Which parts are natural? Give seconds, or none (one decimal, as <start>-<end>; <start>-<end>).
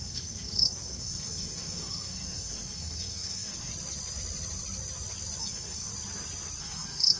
3.7-5.4; 5.9-6.6